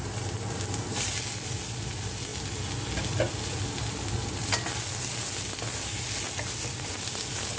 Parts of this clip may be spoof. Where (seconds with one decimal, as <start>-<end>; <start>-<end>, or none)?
none